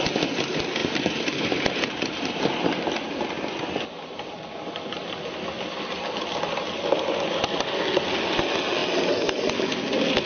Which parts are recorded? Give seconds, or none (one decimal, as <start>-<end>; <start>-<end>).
0.0-0.8; 2.4-10.3